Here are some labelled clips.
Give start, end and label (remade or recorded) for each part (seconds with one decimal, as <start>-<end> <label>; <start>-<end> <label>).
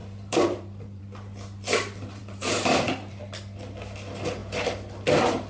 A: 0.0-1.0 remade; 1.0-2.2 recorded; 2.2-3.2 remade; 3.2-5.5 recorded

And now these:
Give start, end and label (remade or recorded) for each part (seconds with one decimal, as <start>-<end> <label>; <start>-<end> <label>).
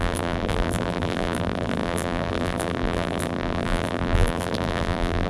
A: 0.0-5.3 remade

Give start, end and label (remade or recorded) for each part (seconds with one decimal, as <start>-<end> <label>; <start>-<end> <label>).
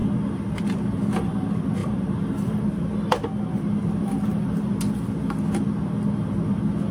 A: 0.0-1.8 recorded; 1.8-2.6 remade; 2.6-6.9 recorded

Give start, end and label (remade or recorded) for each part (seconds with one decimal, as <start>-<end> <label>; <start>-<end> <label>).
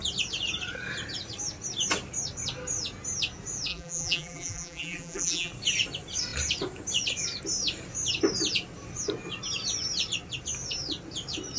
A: 0.0-3.7 recorded; 3.7-5.5 remade; 5.5-11.6 recorded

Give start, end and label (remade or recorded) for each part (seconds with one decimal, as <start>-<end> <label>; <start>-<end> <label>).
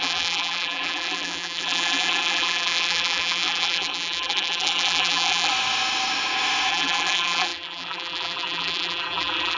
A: 0.0-5.5 remade; 5.5-6.7 recorded; 6.7-9.6 remade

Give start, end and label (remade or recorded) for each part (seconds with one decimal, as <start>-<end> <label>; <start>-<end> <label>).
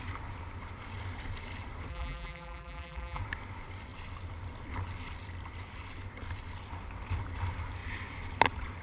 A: 0.0-1.9 recorded; 1.9-3.2 remade; 3.2-8.8 recorded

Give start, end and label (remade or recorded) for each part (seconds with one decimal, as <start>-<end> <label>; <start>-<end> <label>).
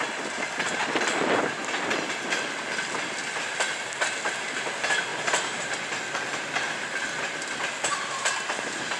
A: 0.0-5.1 recorded; 5.1-5.7 remade; 5.7-9.0 recorded